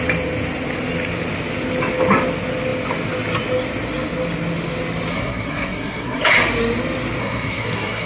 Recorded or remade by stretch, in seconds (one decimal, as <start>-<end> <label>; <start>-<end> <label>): 0.0-5.1 recorded; 5.1-6.2 remade; 6.2-7.2 recorded; 7.2-8.1 remade